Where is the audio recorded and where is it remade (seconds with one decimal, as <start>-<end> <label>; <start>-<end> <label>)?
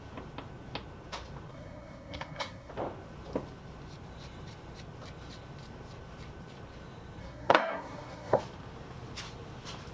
0.0-1.5 recorded; 1.5-2.7 remade; 2.7-7.2 recorded; 7.2-8.4 remade; 8.4-9.9 recorded